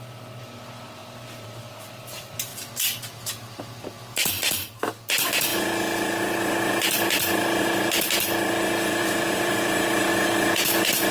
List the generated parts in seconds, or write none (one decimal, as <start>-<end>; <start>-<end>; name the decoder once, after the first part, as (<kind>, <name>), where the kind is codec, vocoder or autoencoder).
1.0-1.8 (vocoder, BigVGAN v2); 9.0-10.1